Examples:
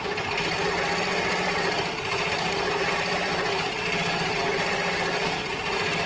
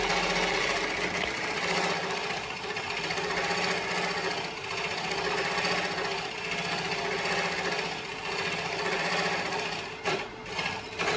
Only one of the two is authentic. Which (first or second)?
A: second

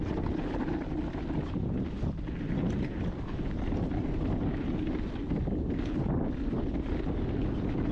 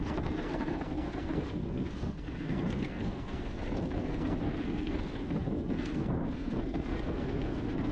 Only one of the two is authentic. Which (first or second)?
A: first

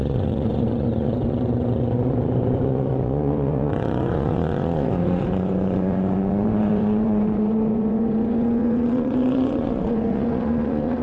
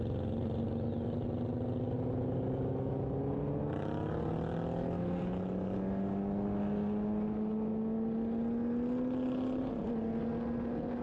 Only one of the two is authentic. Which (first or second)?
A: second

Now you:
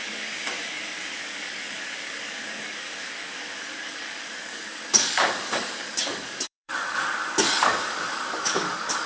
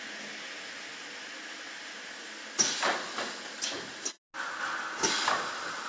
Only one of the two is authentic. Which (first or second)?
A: second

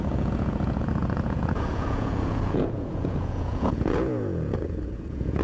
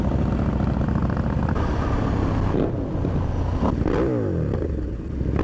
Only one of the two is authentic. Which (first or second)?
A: second